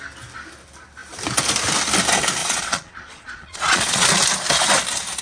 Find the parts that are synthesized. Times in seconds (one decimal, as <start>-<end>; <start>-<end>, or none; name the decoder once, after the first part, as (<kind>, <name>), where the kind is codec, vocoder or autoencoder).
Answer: 2.4-4.1 (vocoder, Vocos)